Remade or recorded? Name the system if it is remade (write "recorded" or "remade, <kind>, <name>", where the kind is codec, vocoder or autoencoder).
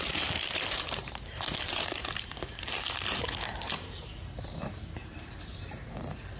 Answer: remade, vocoder, BigVGAN v2